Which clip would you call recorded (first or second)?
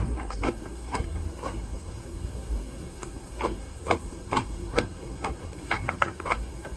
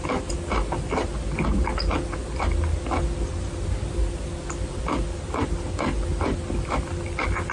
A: second